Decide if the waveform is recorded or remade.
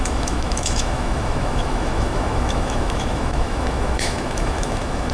remade